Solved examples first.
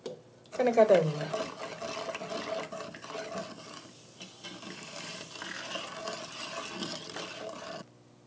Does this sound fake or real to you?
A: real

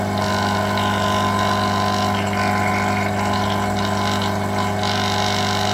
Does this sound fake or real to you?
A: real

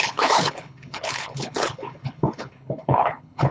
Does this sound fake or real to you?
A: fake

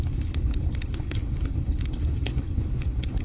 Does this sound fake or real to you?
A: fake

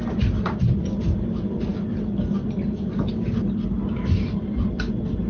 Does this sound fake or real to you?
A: real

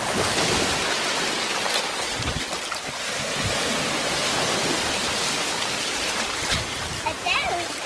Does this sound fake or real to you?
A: real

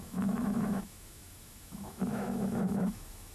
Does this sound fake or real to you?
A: fake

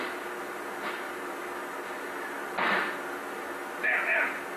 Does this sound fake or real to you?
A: real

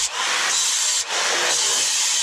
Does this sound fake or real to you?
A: real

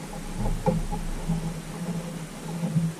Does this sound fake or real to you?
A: real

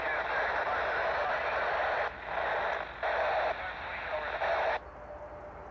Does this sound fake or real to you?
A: real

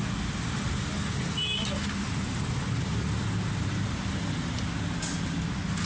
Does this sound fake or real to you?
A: real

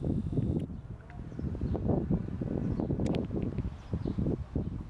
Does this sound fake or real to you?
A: real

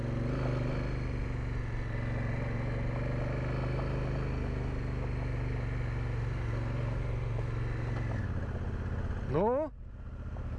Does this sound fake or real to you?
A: real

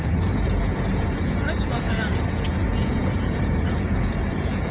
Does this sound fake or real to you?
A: fake